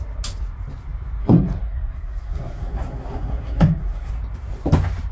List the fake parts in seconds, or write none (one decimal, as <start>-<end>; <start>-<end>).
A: 1.2-4.1